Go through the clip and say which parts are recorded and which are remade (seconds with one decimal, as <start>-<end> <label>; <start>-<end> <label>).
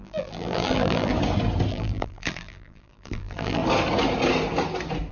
0.0-1.1 remade; 1.1-1.7 recorded; 1.7-3.6 remade; 3.6-5.1 recorded